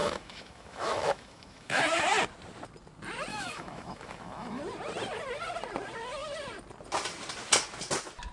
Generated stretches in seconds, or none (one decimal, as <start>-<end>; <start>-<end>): 0.0-1.8; 3.3-4.6

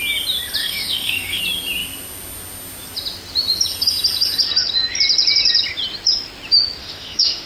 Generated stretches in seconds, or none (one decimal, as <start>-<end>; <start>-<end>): 0.6-1.4; 6.8-7.5

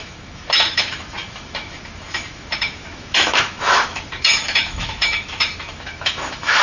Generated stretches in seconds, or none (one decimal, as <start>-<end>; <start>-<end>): 0.0-6.6

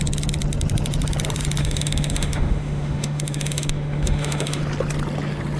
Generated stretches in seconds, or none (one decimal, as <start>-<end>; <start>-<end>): 1.6-4.6

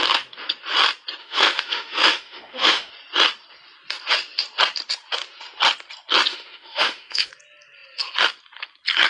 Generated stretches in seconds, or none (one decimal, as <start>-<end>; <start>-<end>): 1.2-2.9; 6.3-7.3

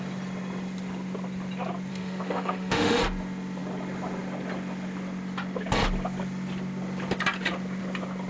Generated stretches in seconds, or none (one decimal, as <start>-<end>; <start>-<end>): 1.9-3.0

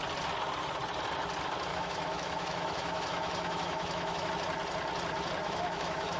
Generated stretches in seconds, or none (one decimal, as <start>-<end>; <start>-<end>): 1.7-4.3; 5.4-6.2

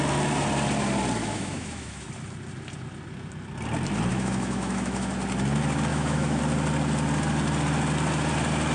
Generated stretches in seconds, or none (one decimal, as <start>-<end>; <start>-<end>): 1.2-2.0; 4.1-5.1; 5.9-6.4